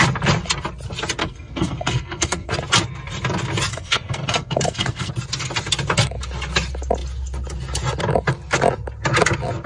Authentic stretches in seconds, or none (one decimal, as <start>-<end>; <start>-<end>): 0.0-1.2; 2.5-3.7; 5.1-9.7

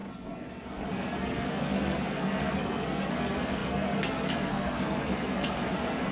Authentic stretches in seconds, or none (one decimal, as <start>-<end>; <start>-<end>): none

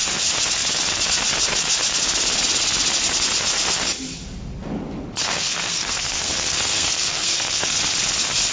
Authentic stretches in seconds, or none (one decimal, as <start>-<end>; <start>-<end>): 0.0-5.2; 7.8-8.5

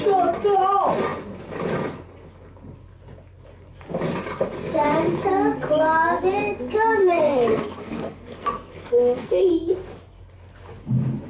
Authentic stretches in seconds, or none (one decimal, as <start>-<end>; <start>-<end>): 0.0-7.0; 9.5-11.3